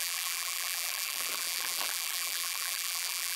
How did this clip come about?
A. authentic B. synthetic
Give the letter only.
B